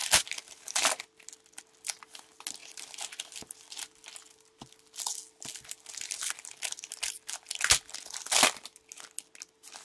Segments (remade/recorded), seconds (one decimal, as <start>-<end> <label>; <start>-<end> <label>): 0.0-1.0 remade; 1.0-9.8 recorded